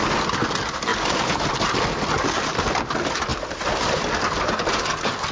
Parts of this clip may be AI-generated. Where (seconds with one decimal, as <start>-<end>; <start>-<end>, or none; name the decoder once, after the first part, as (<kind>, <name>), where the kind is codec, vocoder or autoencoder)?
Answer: none